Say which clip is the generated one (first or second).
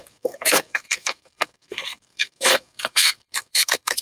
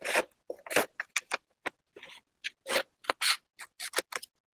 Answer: first